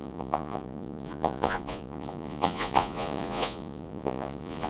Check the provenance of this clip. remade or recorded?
remade